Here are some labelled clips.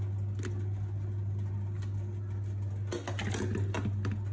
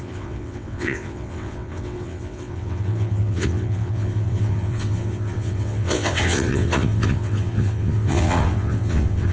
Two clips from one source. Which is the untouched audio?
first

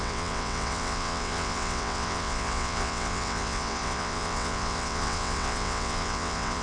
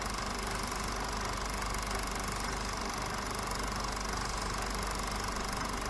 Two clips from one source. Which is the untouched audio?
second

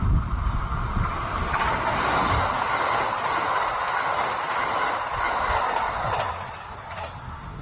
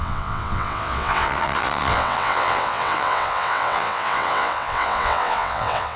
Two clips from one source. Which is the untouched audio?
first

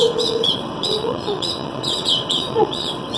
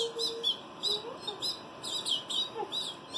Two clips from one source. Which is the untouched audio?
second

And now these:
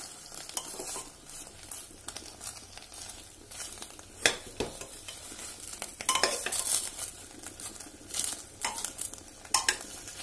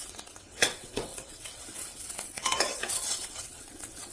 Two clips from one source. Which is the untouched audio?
first